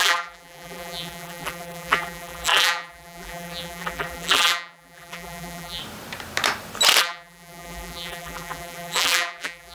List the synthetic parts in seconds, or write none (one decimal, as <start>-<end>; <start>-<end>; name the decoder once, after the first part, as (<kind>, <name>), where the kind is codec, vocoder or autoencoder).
0.0-5.8 (vocoder, BigVGAN v2); 7.0-9.7